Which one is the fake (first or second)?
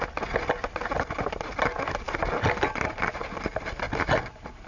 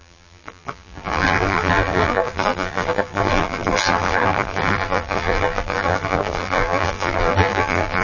second